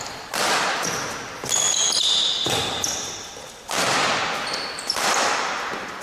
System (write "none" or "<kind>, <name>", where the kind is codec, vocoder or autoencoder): none